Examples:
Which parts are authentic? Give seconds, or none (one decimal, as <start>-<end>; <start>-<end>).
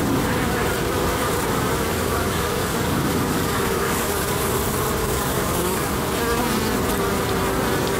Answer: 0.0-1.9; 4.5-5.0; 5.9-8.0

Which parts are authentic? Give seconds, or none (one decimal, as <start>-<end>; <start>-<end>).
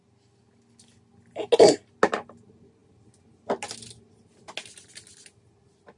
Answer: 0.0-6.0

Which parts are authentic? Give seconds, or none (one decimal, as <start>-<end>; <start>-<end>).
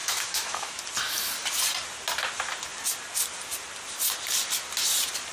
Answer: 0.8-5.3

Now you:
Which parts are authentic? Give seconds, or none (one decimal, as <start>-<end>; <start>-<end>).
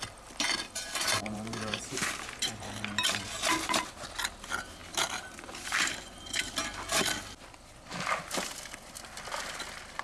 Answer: 0.0-1.2; 3.1-4.8; 6.5-10.0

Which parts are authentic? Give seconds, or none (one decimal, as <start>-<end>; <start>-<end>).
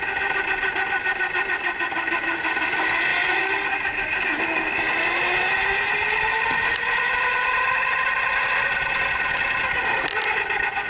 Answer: 0.0-10.9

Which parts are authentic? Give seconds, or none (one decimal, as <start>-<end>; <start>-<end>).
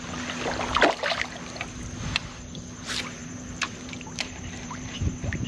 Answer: 0.0-3.2